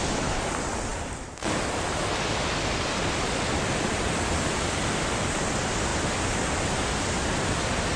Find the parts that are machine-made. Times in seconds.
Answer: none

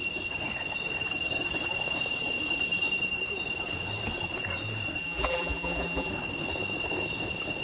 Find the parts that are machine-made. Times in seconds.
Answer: 5.0-6.1 (vocoder, BigVGAN v2)

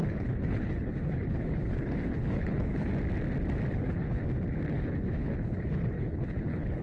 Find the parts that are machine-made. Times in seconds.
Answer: 0.0-2.9 (codec, HILCodec); 3.7-4.2; 4.7-6.8

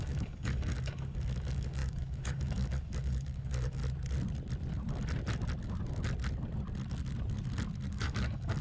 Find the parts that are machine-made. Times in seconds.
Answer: 0.0-3.8 (codec, DAC); 7.9-8.6

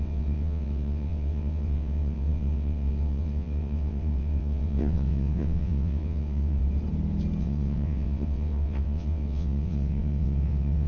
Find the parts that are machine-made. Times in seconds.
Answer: 0.0-6.6 (vocoder, WaveNeXt); 7.4-10.9

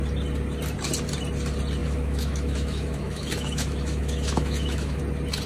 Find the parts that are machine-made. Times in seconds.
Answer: 1.8-5.0 (autoencoder, DAC-VAE)